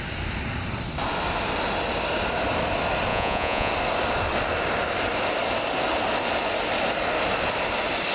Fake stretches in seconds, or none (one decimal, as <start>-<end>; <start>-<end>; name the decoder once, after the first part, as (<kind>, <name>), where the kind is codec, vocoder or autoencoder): 3.1-3.7 (vocoder, Vocos)